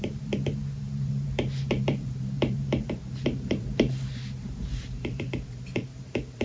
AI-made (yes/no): yes